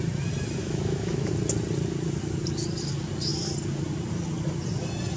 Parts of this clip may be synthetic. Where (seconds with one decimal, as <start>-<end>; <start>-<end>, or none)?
0.6-1.3